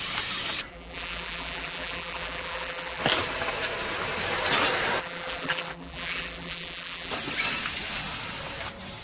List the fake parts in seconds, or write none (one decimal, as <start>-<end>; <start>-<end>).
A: 0.7-3.0; 5.0-7.1

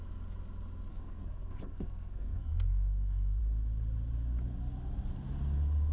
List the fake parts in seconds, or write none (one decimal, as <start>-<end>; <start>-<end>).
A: 0.9-3.4

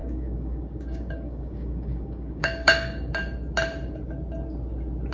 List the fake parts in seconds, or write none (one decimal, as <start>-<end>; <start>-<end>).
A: 0.0-3.1

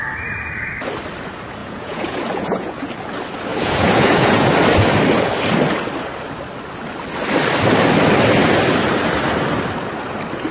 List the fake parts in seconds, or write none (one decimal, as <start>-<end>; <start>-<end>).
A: 1.6-2.9; 3.5-4.5

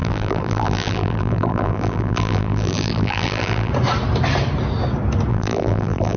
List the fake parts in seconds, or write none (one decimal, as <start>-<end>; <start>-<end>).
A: 0.0-3.7; 5.3-6.2

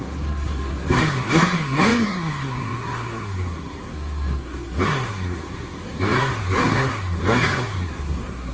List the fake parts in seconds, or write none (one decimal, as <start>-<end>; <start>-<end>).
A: 0.0-8.5

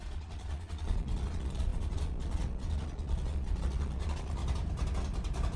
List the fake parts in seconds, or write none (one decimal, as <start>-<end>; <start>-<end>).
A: 0.0-4.4

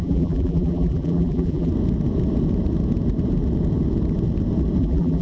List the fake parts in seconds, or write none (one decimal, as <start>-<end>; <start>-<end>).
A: 0.0-1.7; 4.8-5.2